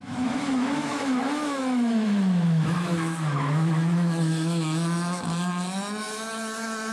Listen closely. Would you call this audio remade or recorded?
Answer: remade